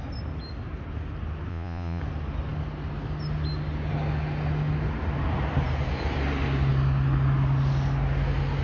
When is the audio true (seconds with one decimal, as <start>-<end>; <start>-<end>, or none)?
0.0-1.5; 2.0-8.6

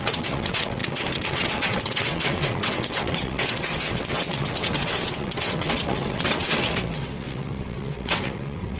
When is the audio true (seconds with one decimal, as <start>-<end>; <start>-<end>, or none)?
none